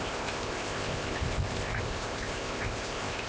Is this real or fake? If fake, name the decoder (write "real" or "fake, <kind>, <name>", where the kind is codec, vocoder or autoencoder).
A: fake, codec, ZipCodec